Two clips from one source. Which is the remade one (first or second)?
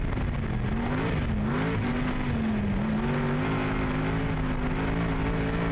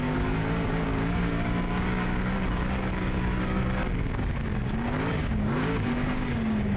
second